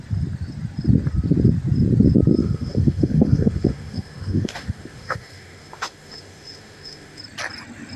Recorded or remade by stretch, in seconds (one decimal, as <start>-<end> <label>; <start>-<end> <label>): 0.0-2.4 recorded; 2.4-7.2 remade; 7.2-8.0 recorded